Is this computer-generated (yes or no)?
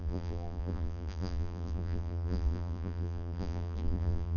yes